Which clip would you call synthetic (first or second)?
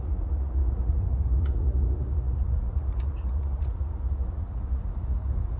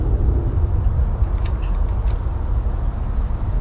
first